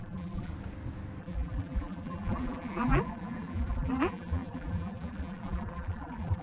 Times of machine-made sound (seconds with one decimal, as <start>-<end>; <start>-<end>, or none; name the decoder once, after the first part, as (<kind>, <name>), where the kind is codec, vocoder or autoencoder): 0.0-0.5 (vocoder, BigVGAN v2); 1.2-6.4